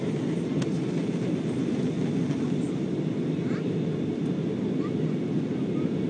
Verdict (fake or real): real